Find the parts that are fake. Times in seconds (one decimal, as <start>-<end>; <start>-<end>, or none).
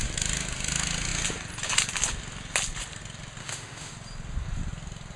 3.4-3.9